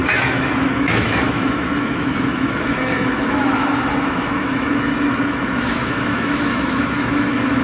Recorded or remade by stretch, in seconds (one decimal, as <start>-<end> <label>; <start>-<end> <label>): 0.0-7.6 remade